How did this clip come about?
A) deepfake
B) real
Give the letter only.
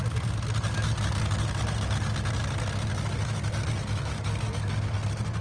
B